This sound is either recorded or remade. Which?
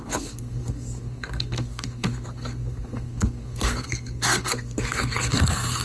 remade